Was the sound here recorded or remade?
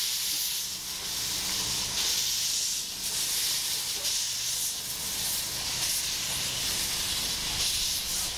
recorded